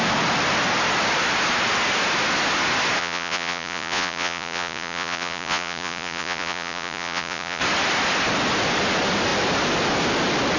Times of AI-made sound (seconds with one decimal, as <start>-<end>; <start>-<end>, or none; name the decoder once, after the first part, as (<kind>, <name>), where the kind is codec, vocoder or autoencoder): 3.0-7.6 (vocoder, Vocos)